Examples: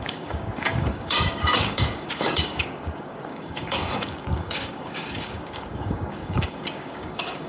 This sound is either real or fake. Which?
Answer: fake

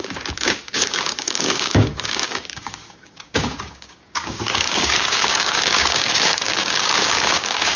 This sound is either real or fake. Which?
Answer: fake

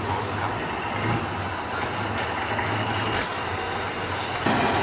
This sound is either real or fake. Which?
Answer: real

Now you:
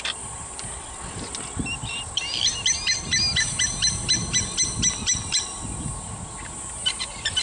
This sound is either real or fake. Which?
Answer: real